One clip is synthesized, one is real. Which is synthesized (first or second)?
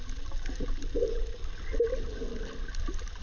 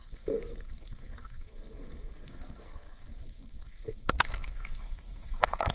second